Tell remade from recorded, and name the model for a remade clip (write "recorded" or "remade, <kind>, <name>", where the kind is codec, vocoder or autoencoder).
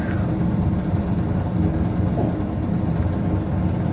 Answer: recorded